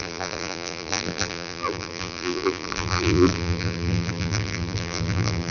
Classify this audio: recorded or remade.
remade